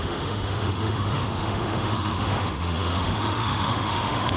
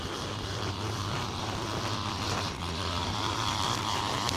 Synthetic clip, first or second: first